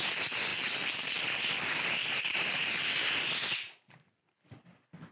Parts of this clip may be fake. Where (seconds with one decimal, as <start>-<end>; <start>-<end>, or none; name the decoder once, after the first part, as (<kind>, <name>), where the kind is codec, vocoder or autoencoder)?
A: 0.5-3.2 (vocoder, BigVGAN v2)